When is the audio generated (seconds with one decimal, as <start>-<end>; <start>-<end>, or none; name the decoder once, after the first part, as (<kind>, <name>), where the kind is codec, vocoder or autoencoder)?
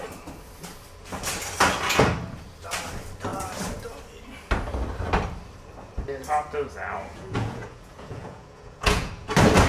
7.0-9.1 (vocoder, Vocos)